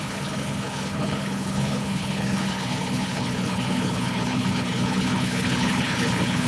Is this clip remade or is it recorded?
remade